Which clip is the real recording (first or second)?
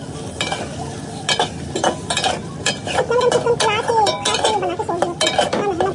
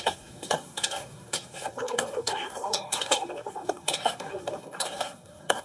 first